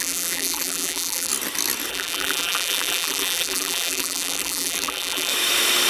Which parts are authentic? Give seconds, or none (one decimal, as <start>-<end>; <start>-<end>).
1.3-1.9; 5.3-5.9